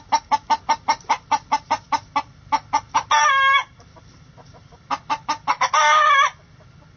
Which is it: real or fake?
real